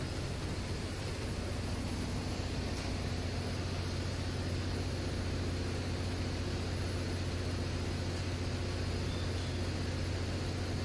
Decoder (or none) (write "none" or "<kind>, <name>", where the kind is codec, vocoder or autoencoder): none